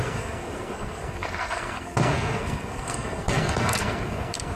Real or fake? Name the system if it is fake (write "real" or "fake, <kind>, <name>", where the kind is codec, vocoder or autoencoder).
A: fake, codec, SNAC